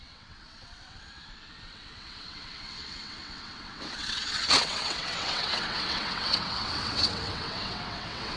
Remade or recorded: remade